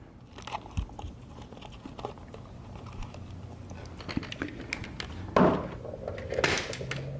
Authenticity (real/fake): real